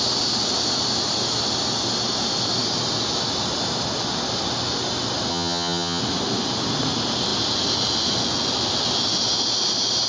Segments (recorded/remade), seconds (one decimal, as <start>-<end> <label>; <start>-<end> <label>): 0.0-5.3 recorded; 5.3-6.0 remade; 6.0-10.1 recorded